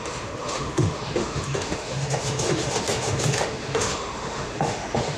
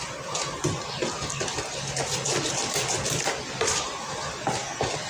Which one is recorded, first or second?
second